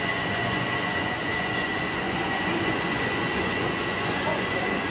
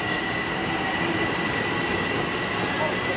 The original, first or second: second